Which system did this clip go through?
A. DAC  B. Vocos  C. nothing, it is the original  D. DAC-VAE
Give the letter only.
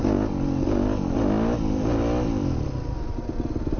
C